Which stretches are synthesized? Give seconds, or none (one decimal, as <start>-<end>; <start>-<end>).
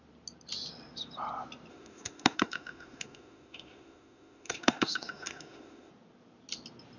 1.7-5.9